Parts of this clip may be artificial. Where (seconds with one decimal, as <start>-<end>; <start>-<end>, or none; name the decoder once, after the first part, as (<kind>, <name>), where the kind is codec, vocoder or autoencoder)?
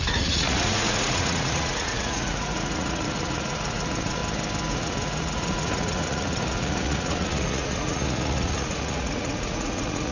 0.0-4.2 (vocoder, Vocos); 4.7-10.1